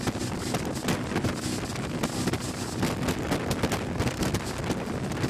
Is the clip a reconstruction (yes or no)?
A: no